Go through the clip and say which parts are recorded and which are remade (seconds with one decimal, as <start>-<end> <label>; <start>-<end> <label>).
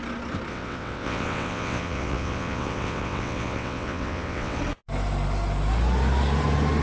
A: 0.0-0.5 recorded; 0.5-4.6 remade; 4.6-6.8 recorded